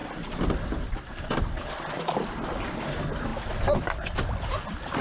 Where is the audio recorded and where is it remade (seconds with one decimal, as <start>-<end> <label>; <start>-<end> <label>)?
0.0-5.0 recorded